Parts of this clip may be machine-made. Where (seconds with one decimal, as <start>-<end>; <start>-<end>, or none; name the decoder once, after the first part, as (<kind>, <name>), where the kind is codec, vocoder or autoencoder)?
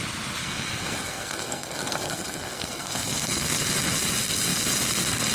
0.4-3.6 (codec, SNAC)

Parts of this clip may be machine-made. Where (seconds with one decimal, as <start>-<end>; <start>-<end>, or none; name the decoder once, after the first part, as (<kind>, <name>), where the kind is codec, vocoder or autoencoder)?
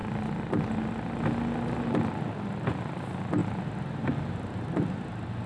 none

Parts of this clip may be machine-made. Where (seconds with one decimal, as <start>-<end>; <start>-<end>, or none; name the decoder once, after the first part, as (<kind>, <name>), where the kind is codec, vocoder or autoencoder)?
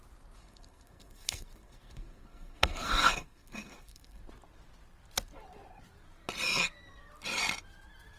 0.4-4.2 (codec, SNAC)